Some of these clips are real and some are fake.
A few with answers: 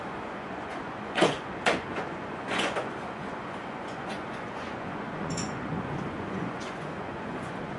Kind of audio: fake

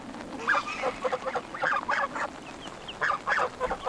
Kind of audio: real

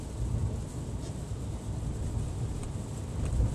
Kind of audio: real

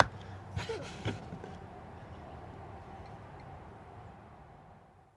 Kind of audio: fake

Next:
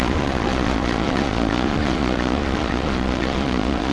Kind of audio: fake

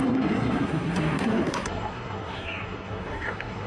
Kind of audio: fake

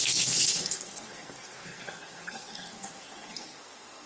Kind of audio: fake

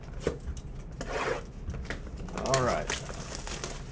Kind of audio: real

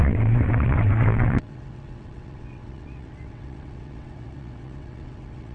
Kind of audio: fake